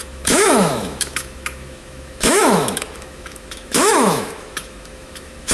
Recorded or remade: remade